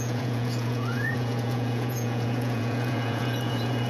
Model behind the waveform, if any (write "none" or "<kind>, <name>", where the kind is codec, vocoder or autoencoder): vocoder, Vocos